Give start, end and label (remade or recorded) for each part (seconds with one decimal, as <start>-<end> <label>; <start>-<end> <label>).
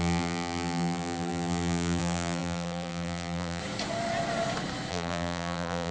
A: 0.0-3.6 remade; 3.6-4.9 recorded; 4.9-5.9 remade